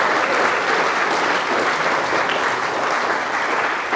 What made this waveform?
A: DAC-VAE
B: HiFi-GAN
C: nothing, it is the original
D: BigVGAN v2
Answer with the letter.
D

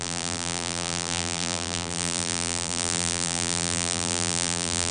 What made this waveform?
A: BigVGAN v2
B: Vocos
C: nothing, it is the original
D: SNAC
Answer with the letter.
A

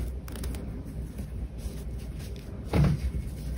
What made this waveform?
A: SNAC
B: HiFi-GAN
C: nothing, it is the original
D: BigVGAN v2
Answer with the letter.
C